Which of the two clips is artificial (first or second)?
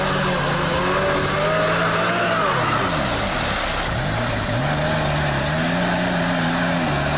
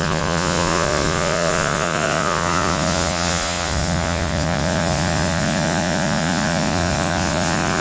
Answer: second